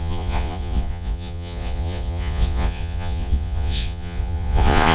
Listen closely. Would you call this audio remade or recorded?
remade